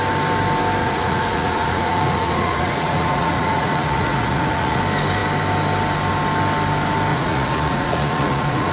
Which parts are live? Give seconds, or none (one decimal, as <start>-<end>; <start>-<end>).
0.0-0.8; 4.8-7.1